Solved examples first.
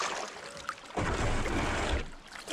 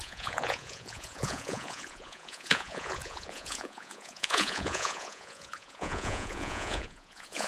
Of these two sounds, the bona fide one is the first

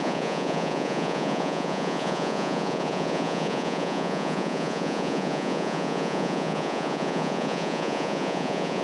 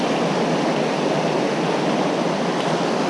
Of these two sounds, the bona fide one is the second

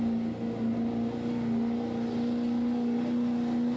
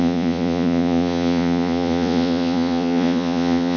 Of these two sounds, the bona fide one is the first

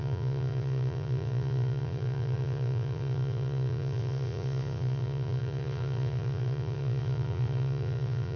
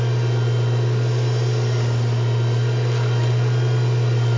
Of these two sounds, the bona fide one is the second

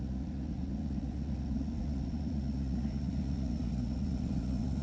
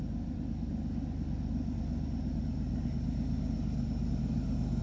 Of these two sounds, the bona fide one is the second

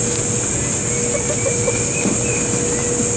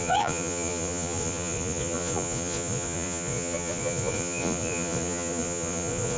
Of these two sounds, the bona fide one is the first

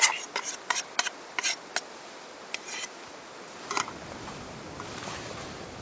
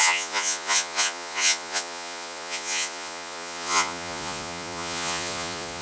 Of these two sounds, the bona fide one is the first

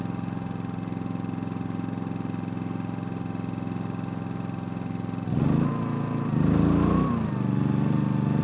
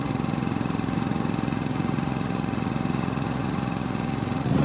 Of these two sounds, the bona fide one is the first